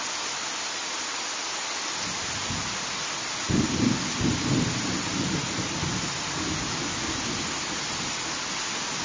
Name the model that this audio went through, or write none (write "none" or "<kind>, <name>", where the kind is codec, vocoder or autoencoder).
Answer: none